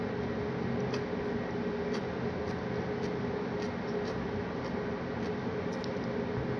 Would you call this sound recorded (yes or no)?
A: yes